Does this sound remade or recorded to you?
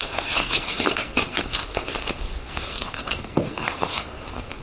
remade